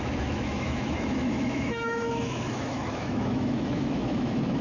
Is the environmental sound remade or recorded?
remade